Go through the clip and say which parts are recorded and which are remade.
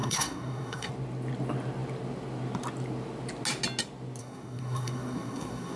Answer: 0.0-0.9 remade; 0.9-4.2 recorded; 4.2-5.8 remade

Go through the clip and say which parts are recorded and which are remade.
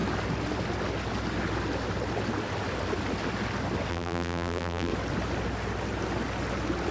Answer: 0.0-3.9 recorded; 3.9-4.9 remade; 4.9-6.9 recorded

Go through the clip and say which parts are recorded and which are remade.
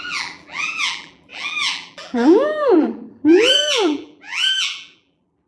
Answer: 0.0-5.5 remade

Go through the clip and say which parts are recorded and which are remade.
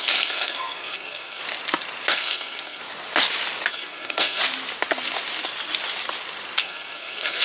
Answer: 0.0-1.4 remade; 1.4-2.1 recorded; 2.1-2.8 remade; 2.8-3.7 recorded; 3.7-4.4 remade; 4.4-6.6 recorded; 6.6-7.4 remade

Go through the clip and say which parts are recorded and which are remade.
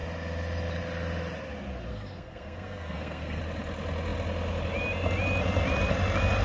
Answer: 0.0-1.9 recorded; 1.9-3.4 remade; 3.4-6.4 recorded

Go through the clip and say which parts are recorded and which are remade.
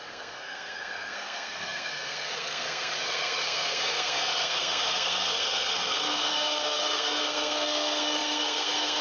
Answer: 0.0-9.0 remade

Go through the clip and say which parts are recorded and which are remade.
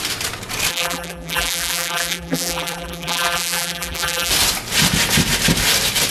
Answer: 0.0-0.7 recorded; 0.7-4.3 remade; 4.3-6.1 recorded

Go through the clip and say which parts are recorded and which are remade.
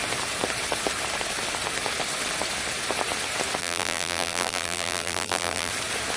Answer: 0.0-3.6 recorded; 3.6-5.7 remade; 5.7-6.2 recorded